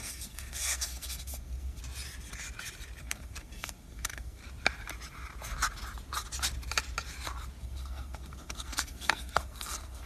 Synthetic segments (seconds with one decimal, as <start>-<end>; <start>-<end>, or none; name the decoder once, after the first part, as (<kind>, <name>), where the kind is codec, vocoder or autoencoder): 0.0-1.8 (codec, SNAC); 3.0-4.4; 7.6-10.1